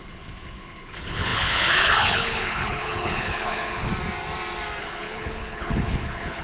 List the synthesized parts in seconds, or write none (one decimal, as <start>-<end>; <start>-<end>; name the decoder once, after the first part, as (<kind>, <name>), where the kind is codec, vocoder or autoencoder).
0.0-3.9 (codec, HILCodec); 4.8-6.4